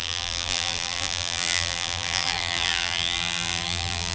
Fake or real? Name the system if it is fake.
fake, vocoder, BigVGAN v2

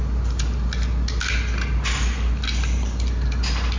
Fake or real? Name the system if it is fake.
real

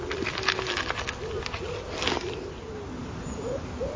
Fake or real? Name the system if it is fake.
real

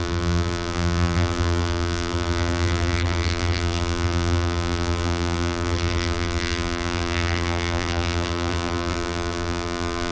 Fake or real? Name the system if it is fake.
fake, vocoder, BigVGAN v2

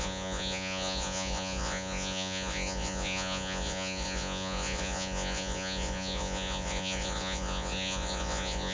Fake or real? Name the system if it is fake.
fake, vocoder, Vocos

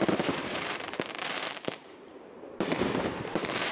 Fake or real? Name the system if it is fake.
fake, vocoder, BigVGAN v2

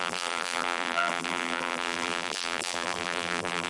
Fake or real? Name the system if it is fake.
fake, vocoder, BigVGAN v2